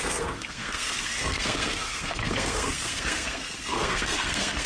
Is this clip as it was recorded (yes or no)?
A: no